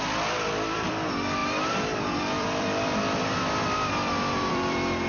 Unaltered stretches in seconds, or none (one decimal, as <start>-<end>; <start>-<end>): none